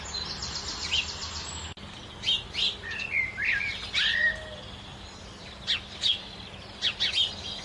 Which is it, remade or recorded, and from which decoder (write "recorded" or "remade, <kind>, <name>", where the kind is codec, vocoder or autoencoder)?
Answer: recorded